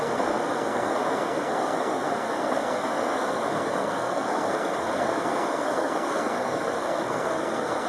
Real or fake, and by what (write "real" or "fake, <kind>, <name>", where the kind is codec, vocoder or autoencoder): fake, codec, SNAC